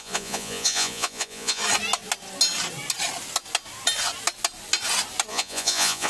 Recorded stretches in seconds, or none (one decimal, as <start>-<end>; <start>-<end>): 1.6-5.3